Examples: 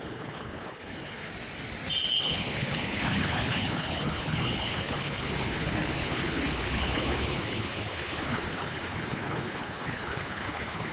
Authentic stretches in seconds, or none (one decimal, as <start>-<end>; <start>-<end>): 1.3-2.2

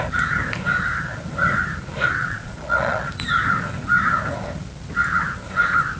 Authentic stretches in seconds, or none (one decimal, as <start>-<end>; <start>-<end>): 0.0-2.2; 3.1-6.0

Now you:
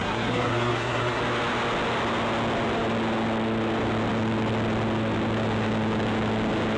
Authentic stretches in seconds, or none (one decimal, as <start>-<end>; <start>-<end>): 1.2-6.8

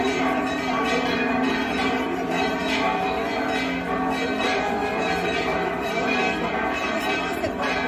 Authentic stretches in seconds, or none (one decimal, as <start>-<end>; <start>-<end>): 2.6-4.4

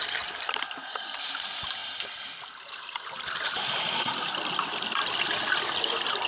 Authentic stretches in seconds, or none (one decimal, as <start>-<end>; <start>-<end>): 0.0-6.3

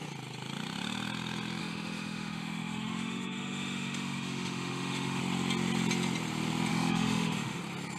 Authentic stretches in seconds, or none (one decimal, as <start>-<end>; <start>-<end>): 0.0-1.6; 5.2-6.7; 7.6-8.0